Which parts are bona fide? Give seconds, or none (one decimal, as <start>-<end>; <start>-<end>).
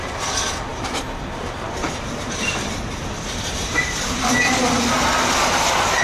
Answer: 0.0-0.7; 4.3-6.0